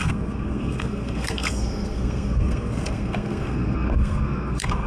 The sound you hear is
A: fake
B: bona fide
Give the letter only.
A